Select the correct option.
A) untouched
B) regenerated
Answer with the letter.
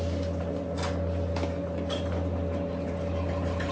A